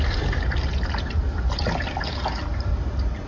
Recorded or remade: recorded